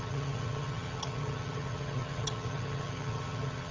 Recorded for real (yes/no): no